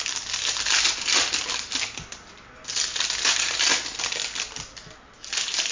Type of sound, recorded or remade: recorded